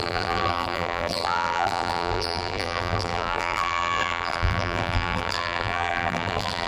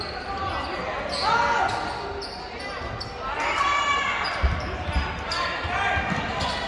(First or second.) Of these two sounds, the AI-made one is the first